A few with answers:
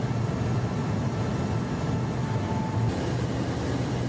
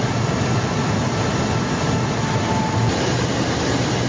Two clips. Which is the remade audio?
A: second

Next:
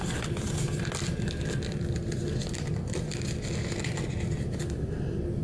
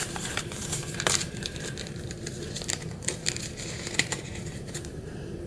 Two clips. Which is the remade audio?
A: second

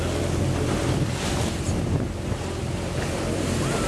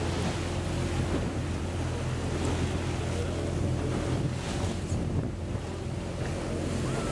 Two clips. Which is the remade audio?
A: first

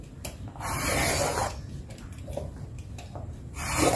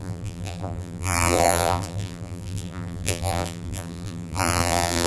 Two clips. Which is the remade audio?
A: second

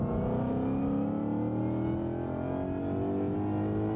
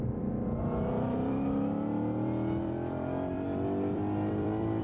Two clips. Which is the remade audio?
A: second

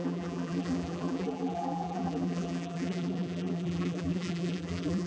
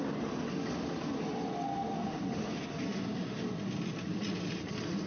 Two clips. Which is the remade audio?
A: first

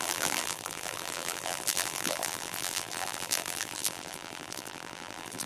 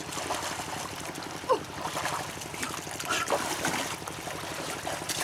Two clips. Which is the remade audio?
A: first